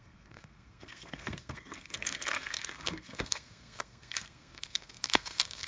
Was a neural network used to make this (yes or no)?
yes